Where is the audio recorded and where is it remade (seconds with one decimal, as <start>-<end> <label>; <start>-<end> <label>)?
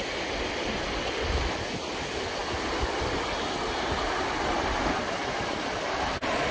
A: 0.0-6.5 recorded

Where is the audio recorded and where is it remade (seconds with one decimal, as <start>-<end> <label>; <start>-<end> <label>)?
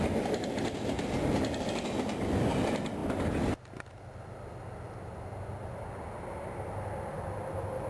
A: 0.0-7.9 recorded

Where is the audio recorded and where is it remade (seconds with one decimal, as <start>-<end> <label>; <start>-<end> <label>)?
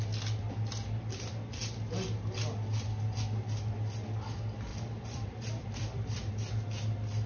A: 0.0-4.7 recorded; 4.7-6.3 remade; 6.3-7.3 recorded